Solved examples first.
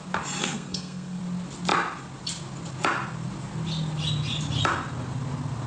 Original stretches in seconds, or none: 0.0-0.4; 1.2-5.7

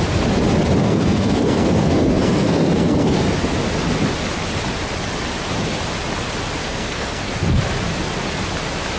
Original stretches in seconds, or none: 0.0-0.8; 3.3-6.6; 7.6-9.0

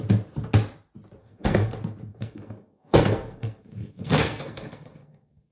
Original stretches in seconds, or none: 0.0-1.2; 1.7-2.1